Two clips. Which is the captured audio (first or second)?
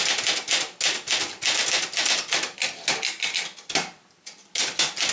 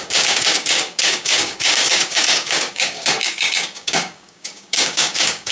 first